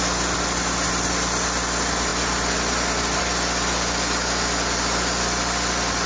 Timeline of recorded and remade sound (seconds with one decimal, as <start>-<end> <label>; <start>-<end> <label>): 0.0-6.1 recorded